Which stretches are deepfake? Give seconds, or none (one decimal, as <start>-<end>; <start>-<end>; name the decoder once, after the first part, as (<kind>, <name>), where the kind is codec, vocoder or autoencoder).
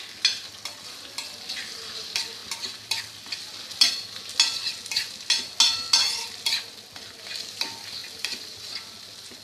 8.0-8.7 (vocoder, BigVGAN v2)